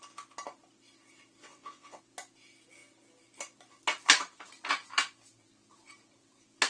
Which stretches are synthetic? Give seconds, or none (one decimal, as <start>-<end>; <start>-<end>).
1.4-2.0